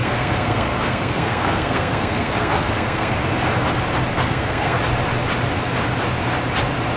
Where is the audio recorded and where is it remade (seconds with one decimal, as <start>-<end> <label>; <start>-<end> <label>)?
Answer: 0.0-3.2 remade; 3.2-4.1 recorded; 4.1-4.8 remade; 4.8-7.0 recorded